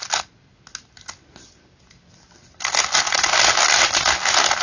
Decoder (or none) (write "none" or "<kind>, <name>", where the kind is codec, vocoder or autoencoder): none